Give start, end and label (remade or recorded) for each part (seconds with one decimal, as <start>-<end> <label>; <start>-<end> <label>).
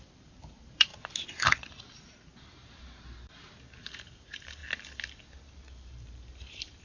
0.0-0.9 remade; 0.9-1.7 recorded; 1.7-2.3 remade; 2.3-3.8 recorded; 3.8-4.6 remade; 4.6-5.7 recorded; 5.7-6.8 remade